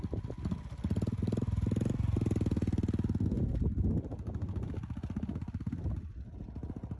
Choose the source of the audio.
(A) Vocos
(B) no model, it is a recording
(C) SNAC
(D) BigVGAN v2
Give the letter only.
B